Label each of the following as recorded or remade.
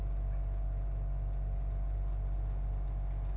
recorded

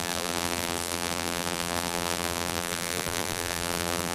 remade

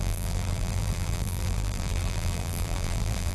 remade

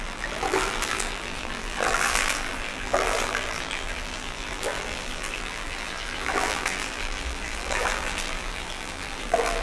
remade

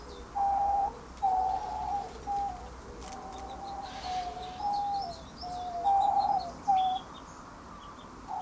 recorded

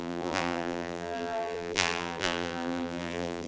remade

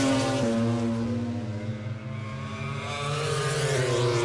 recorded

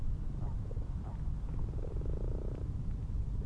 remade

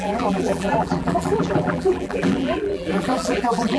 remade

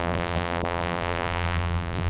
remade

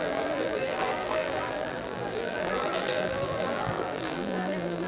remade